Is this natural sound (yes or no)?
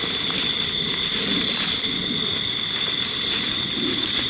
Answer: yes